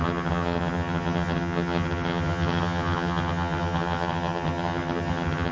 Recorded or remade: remade